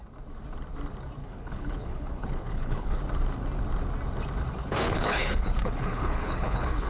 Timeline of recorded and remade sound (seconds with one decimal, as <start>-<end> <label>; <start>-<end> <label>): 0.0-1.2 recorded; 1.2-3.0 remade; 3.0-4.6 recorded; 4.6-6.9 remade